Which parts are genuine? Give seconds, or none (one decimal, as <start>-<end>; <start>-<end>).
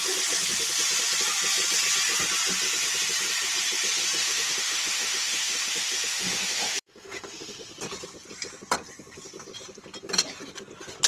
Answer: 0.0-4.2; 7.7-11.1